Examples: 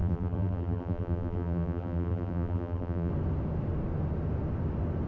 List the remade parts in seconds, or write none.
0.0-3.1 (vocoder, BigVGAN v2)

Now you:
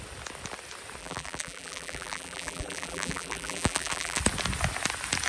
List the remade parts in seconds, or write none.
1.0-4.2 (vocoder, BigVGAN v2)

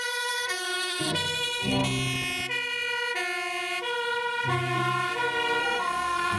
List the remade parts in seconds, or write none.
0.0-1.8 (codec, SNAC); 5.6-6.4